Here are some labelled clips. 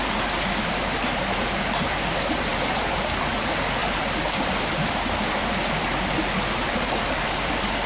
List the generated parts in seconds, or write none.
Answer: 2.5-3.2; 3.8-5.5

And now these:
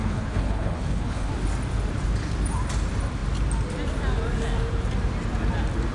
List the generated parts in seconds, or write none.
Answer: 0.0-1.3

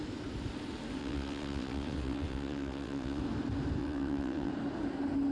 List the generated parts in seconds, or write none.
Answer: 1.0-3.2; 3.8-4.5

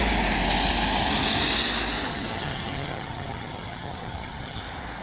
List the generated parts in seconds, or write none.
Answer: 2.1-4.6